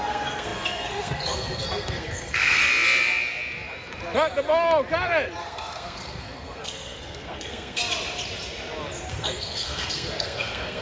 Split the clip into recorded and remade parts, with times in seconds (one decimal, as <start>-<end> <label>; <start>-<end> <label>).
0.0-2.6 remade; 2.6-5.4 recorded; 5.4-7.8 remade; 7.8-9.1 recorded; 9.1-10.8 remade